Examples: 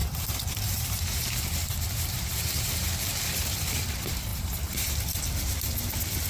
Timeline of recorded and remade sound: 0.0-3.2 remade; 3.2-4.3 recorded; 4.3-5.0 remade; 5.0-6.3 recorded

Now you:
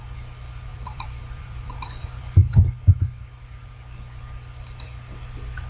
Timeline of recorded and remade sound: 0.0-0.7 recorded; 0.7-2.5 remade; 2.5-5.7 recorded

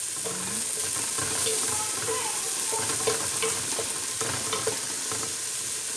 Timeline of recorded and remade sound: 0.0-1.5 recorded; 1.5-2.4 remade; 2.4-6.0 recorded

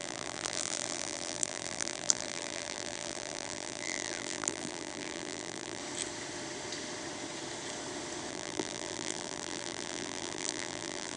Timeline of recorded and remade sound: 0.0-5.8 remade; 5.8-8.3 recorded; 8.3-11.2 remade

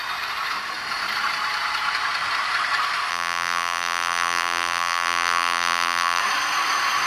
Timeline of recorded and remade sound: 0.0-3.1 recorded; 3.1-6.2 remade; 6.2-7.1 recorded

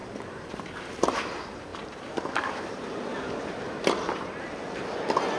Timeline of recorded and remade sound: 0.0-1.1 remade; 1.1-1.7 recorded; 1.7-3.6 remade; 3.6-5.4 recorded

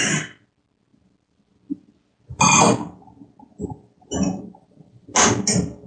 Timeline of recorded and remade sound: 0.0-5.9 recorded

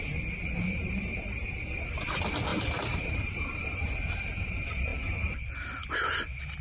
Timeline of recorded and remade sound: 0.0-4.9 remade; 4.9-6.6 recorded